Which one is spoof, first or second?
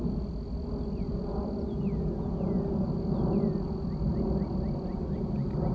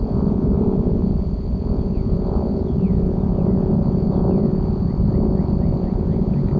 second